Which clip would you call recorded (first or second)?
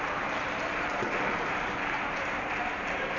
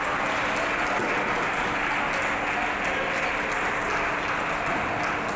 second